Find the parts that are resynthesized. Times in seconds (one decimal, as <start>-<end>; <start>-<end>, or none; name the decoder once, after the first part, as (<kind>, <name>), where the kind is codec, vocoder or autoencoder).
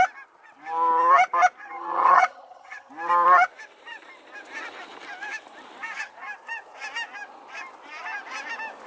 1.6-2.9 (vocoder, HiFi-GAN)